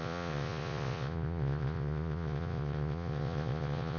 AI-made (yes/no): yes